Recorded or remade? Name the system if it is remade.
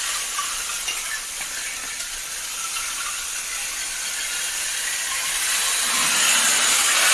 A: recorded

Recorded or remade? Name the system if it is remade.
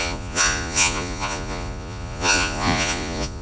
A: remade, vocoder, Vocos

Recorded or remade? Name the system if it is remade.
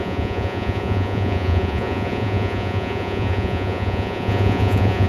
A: remade, vocoder, Vocos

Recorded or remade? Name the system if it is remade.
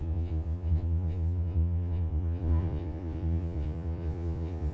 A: remade, vocoder, Vocos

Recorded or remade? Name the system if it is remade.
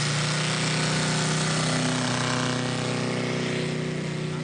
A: recorded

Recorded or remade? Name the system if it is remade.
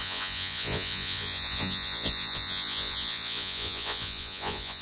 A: remade, vocoder, Vocos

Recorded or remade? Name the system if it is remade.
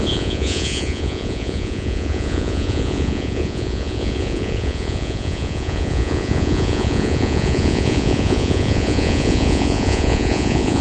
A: remade, vocoder, Vocos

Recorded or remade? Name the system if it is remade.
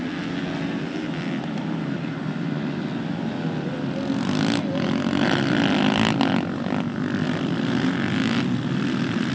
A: recorded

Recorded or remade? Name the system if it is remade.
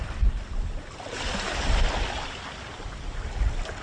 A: recorded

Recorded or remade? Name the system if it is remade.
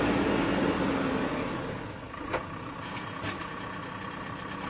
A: recorded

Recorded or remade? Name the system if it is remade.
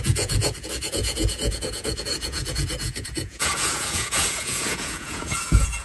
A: remade, vocoder, Vocos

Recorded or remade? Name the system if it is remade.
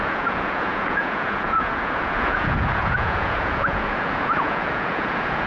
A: remade, vocoder, Vocos